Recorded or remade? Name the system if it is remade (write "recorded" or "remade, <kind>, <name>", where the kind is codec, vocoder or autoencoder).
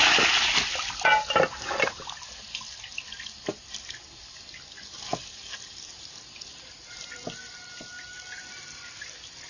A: recorded